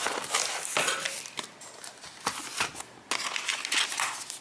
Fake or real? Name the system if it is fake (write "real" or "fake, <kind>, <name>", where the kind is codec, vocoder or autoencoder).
real